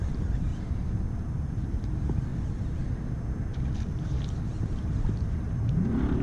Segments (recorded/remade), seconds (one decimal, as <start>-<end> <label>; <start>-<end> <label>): 0.0-0.5 remade; 0.5-1.2 recorded; 1.2-2.3 remade; 2.3-4.0 recorded; 4.0-6.2 remade

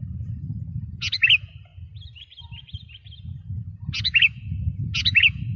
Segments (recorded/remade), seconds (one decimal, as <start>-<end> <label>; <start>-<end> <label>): 0.0-5.6 recorded

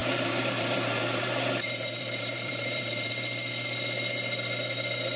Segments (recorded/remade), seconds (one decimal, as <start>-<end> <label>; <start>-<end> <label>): 0.0-3.1 remade; 3.1-5.2 recorded

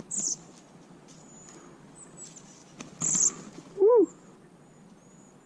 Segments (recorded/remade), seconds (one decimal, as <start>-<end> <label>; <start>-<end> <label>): 0.0-5.5 recorded

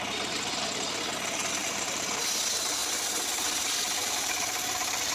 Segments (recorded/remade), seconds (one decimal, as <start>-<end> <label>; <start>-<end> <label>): 0.0-1.6 recorded; 1.6-2.2 remade; 2.2-2.8 recorded; 2.8-5.1 remade

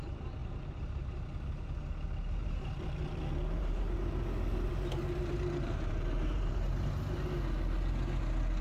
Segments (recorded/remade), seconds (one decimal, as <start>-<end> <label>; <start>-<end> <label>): 0.0-0.4 recorded; 0.4-1.0 remade; 1.0-2.4 recorded; 2.4-3.8 remade; 3.8-4.7 recorded; 4.7-6.9 remade; 6.9-8.6 recorded

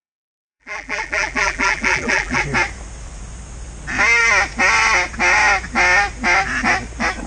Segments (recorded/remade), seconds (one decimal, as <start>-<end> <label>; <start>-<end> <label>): 0.0-2.4 remade; 2.4-7.3 recorded

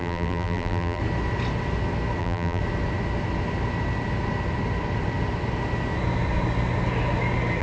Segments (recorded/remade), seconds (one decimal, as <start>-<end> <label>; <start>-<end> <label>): 0.0-1.0 remade; 1.0-2.2 recorded; 2.2-2.6 remade; 2.6-7.6 recorded